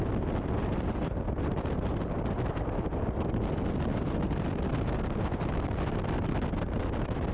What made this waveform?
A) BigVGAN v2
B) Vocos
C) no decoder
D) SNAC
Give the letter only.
C